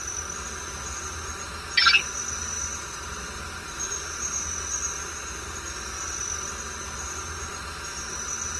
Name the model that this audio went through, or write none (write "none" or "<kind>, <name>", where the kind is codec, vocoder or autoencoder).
none